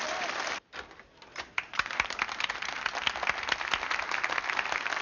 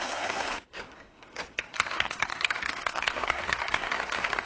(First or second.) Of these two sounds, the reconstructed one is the second